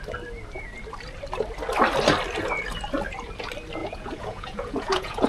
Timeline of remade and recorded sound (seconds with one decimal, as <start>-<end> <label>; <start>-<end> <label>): 0.0-3.8 recorded; 3.8-5.3 remade